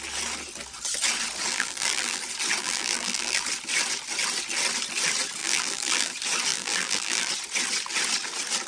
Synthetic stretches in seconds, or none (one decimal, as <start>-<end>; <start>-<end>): 1.5-2.2; 2.6-3.4; 5.4-6.1; 6.5-7.3